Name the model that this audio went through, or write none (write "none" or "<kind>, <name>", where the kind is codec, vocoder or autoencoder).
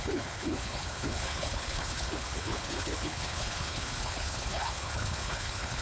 codec, HILCodec